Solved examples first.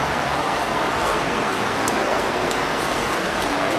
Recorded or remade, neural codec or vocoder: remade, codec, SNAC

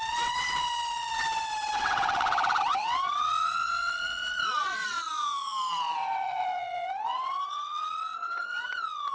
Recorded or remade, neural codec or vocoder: remade, vocoder, WaveNeXt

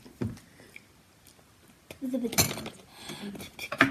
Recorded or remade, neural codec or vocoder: recorded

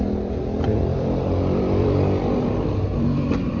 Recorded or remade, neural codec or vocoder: remade, vocoder, BigVGAN v2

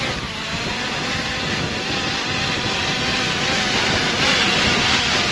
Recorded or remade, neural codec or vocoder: recorded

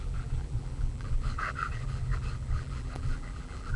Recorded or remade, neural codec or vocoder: remade, vocoder, BigVGAN v2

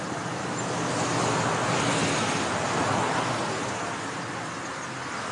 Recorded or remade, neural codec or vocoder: recorded